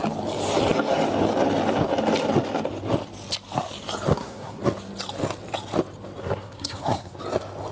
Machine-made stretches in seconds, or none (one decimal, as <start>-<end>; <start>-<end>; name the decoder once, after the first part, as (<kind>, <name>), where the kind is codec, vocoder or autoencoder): 4.1-4.6 (codec, SNAC); 6.2-7.2